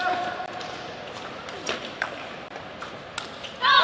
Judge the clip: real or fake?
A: real